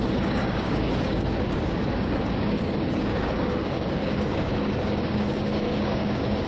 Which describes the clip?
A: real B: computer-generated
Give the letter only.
B